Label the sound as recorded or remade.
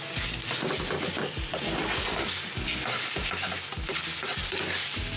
recorded